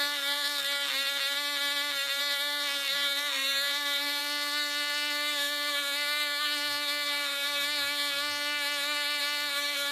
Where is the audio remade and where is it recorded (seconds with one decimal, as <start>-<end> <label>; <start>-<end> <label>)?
0.0-0.9 remade; 0.9-2.2 recorded; 2.2-9.9 remade